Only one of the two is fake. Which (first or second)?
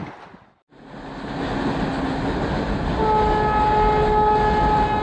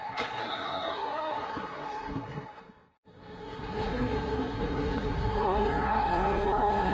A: second